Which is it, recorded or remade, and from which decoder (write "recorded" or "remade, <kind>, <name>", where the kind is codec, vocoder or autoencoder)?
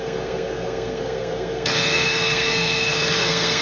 remade, codec, SNAC